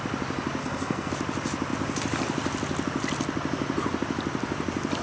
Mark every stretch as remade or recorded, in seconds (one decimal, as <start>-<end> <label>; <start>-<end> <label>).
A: 0.0-0.6 recorded; 0.6-1.1 remade; 1.1-5.0 recorded